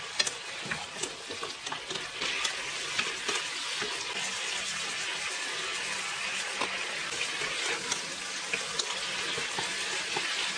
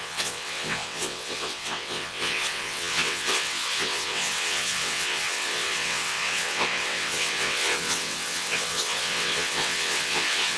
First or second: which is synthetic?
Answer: second